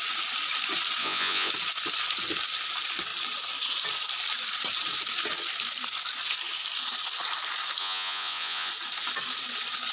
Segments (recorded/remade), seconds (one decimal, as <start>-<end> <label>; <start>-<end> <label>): 0.0-1.0 recorded; 1.0-1.5 remade; 1.5-7.8 recorded; 7.8-8.7 remade; 8.7-9.9 recorded